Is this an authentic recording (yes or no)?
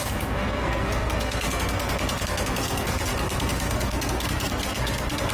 no